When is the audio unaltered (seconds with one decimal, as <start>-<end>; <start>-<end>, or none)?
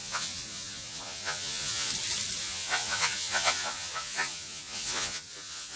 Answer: 1.9-2.4